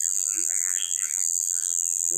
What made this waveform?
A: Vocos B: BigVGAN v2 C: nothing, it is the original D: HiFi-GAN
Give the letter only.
B